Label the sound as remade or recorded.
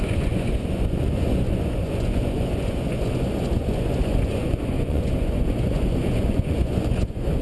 remade